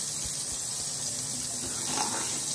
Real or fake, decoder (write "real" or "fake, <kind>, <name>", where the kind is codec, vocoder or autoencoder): real